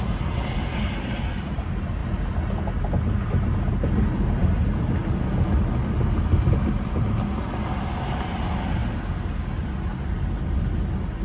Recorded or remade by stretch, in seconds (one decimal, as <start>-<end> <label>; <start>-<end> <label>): 0.0-11.2 recorded